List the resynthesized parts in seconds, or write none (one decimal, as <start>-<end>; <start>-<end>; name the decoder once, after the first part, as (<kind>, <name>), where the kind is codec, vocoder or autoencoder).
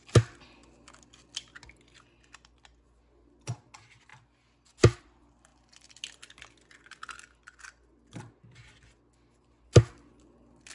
none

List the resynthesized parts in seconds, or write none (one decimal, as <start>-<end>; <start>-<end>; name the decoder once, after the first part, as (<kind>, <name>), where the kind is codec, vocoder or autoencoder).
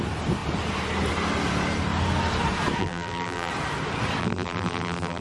2.8-3.5 (vocoder, BigVGAN v2); 4.2-5.2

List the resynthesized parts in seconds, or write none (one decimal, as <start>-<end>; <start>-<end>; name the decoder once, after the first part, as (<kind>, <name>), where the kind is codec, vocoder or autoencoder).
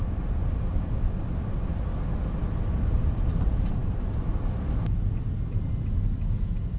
none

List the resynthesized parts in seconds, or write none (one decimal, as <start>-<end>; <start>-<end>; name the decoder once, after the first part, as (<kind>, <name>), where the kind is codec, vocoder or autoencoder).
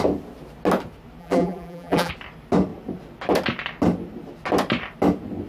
1.2-2.1 (vocoder, BigVGAN v2)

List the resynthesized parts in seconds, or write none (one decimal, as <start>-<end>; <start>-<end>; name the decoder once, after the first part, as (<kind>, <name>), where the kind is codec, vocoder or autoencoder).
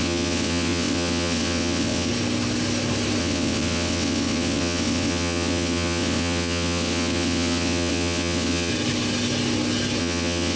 0.0-2.1 (vocoder, WaveNeXt); 3.2-8.7; 10.0-10.6